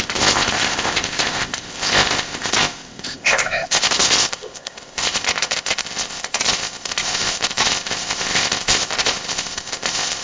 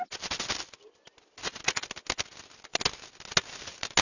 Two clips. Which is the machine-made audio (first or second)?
first